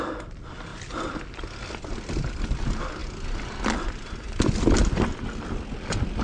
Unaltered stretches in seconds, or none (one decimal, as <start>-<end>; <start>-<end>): 0.0-6.2